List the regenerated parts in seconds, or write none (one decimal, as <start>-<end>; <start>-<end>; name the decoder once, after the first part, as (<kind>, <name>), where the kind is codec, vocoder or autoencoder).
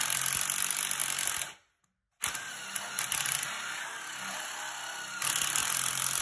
none